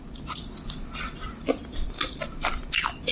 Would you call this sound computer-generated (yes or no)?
no